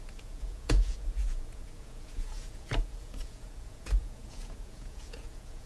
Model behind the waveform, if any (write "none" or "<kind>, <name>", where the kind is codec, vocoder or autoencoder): vocoder, Vocos